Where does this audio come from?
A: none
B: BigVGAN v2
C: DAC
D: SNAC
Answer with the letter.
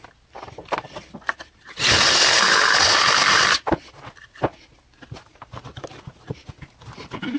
A